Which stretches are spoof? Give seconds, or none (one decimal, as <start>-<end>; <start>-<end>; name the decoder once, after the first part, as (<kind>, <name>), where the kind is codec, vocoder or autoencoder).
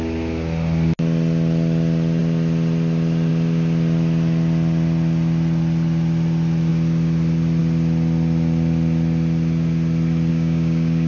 10.3-11.1 (codec, DAC)